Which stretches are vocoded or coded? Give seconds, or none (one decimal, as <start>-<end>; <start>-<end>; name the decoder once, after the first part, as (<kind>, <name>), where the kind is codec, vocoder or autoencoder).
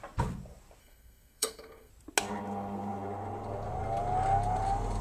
0.8-1.9 (codec, SNAC)